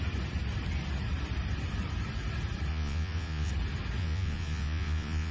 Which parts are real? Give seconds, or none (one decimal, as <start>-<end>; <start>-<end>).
0.0-2.7; 3.5-4.0

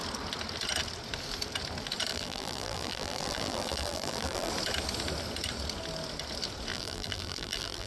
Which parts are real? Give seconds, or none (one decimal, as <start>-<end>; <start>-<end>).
0.0-2.1; 4.5-6.7

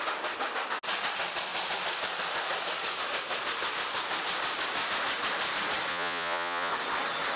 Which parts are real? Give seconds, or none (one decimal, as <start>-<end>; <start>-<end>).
0.0-5.9; 6.7-7.4

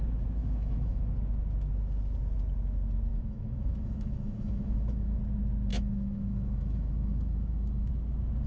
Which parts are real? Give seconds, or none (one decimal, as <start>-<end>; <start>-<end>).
0.0-0.4; 1.1-3.1; 5.2-5.7; 7.9-8.5

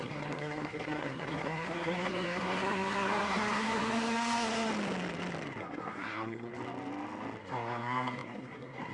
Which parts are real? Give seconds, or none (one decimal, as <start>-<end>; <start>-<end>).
4.7-5.6; 6.5-7.4

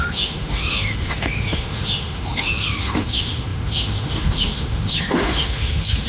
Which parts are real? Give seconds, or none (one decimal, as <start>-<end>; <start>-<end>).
none

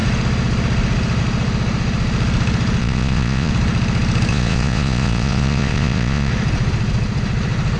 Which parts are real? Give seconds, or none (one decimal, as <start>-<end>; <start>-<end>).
0.0-2.8; 3.5-4.3; 6.3-7.8